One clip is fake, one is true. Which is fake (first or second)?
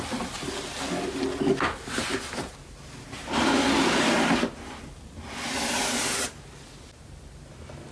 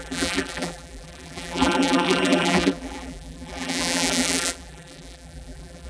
second